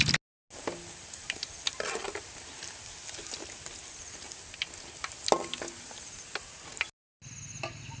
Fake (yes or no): no